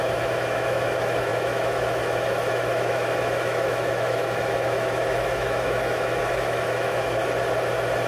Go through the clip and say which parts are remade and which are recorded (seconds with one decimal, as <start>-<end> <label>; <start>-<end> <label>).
0.0-7.2 remade; 7.2-8.1 recorded